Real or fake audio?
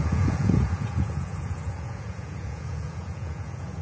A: fake